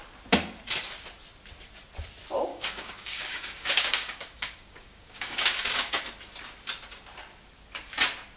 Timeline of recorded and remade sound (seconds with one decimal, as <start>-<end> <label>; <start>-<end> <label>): 0.0-2.5 recorded; 2.5-6.0 remade; 6.0-8.4 recorded